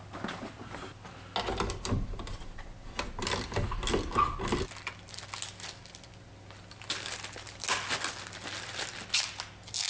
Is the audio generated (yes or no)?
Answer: no